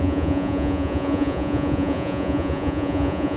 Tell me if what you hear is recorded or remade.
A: remade